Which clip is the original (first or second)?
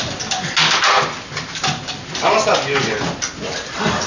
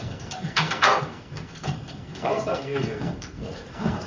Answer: first